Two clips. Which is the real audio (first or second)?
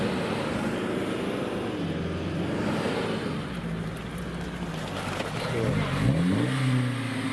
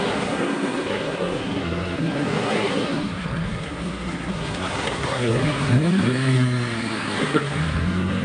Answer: first